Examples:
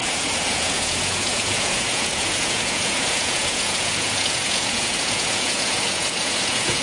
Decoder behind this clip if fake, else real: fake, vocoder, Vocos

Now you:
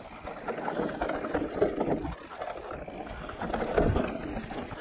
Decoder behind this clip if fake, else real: real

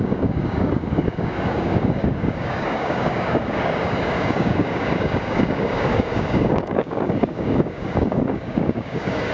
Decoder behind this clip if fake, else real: fake, codec, DAC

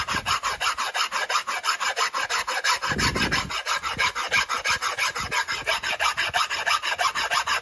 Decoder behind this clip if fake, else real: real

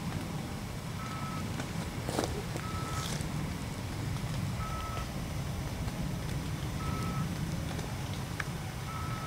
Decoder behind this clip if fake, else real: fake, vocoder, BigVGAN v2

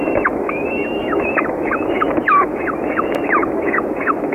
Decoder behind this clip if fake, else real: fake, autoencoder, DAC-VAE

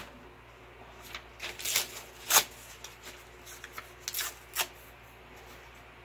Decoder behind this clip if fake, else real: real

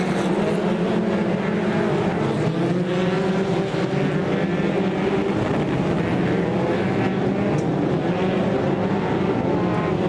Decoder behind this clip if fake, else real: real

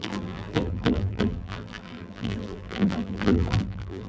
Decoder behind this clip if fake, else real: fake, vocoder, BigVGAN v2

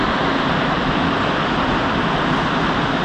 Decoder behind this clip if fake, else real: real